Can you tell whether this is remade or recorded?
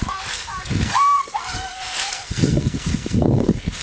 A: remade